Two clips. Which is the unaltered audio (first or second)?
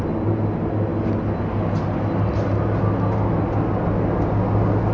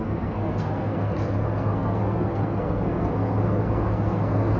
first